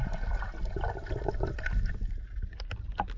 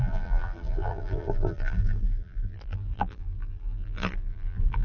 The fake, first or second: second